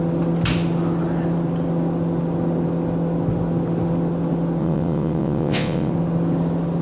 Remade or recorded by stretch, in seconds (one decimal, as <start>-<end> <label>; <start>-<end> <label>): 0.0-4.6 recorded; 4.6-5.9 remade; 5.9-6.8 recorded